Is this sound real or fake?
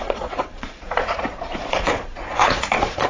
fake